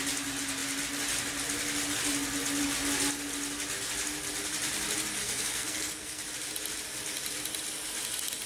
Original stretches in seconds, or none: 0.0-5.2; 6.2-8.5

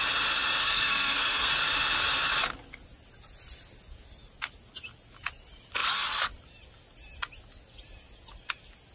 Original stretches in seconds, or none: 0.0-0.6; 1.5-8.9

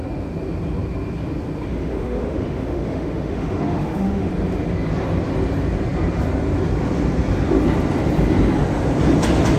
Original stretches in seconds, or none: 0.0-1.7; 4.3-9.6

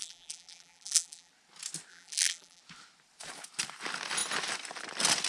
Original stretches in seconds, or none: 1.3-1.9; 2.6-5.3

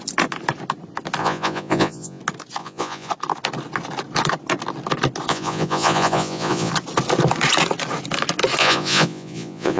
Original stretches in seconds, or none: 0.0-1.2; 2.2-2.6; 3.1-5.3; 6.7-8.6

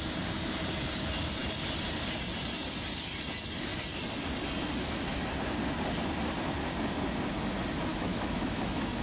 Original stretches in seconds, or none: 0.0-7.9

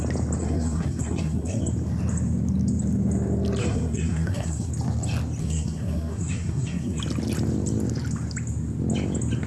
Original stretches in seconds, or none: 0.0-0.4; 1.6-3.6; 4.7-5.4; 7.0-9.5

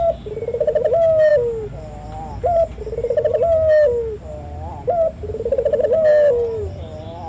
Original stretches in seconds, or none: 0.0-7.3